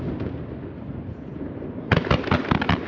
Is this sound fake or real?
fake